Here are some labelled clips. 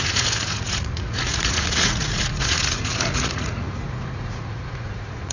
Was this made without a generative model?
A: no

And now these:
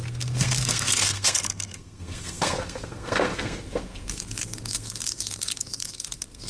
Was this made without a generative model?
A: no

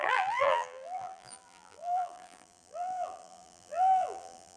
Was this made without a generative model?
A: no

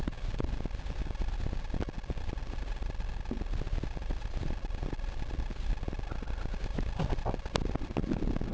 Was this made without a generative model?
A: yes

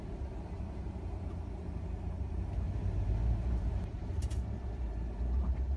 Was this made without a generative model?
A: no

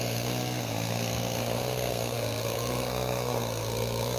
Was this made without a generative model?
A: no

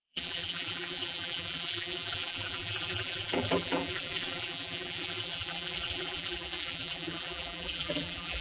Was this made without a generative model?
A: no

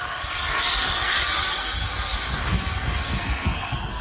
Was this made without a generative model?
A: no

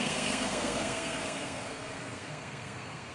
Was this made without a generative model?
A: no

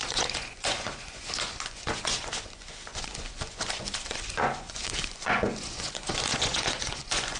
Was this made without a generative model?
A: no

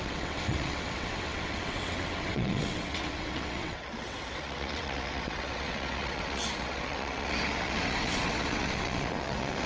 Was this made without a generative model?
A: no